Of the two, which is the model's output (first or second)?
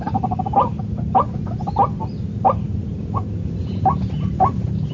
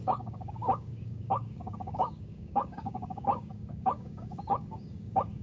second